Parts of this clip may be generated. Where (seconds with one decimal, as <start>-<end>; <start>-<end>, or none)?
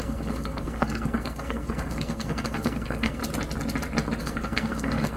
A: 0.0-3.2; 4.2-5.2